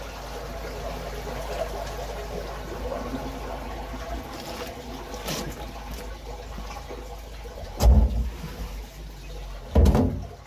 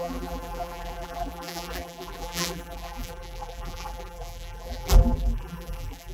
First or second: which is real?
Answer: first